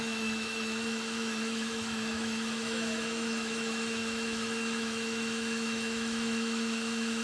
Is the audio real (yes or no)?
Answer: no